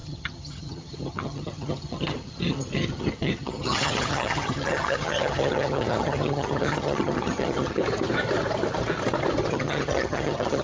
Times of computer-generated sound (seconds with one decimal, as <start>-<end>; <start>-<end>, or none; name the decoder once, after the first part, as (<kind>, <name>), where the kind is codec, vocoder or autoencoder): 0.0-7.8 (vocoder, HiFi-GAN); 9.5-10.6